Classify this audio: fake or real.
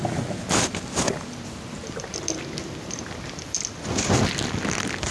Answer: real